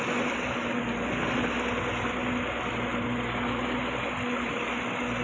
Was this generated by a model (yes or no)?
no